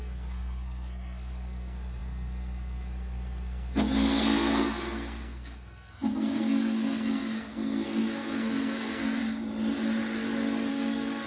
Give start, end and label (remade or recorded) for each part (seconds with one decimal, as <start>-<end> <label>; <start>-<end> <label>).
0.0-9.2 remade; 9.2-10.7 recorded; 10.7-11.3 remade